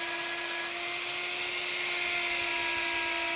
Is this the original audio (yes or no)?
yes